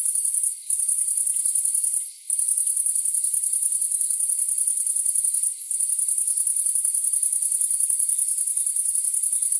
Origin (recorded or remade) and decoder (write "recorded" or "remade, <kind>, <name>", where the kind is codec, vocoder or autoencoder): recorded